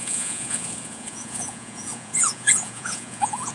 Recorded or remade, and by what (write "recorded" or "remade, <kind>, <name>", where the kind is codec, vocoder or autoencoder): remade, vocoder, Vocos